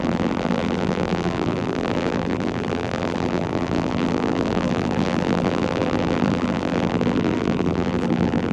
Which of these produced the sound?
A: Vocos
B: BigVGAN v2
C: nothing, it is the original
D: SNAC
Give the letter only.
B